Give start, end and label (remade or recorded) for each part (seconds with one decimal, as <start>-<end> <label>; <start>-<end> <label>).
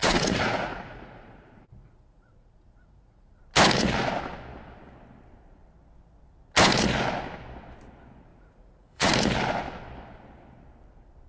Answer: 0.0-3.4 remade; 3.4-8.3 recorded; 8.3-9.1 remade; 9.1-11.3 recorded